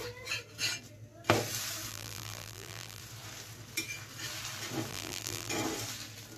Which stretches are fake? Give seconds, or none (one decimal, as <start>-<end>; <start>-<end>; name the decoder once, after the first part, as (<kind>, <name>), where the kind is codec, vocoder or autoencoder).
1.9-3.0 (vocoder, BigVGAN v2); 4.9-5.5